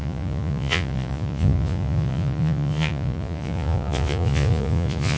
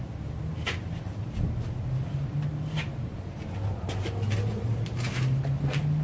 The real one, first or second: second